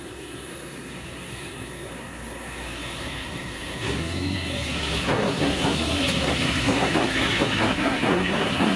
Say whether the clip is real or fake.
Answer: fake